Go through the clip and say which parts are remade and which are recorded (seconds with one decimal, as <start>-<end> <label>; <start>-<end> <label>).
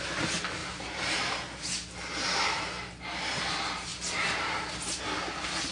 0.0-5.7 recorded